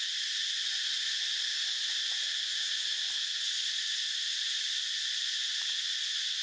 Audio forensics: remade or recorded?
recorded